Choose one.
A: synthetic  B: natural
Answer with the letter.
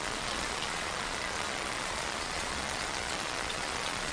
A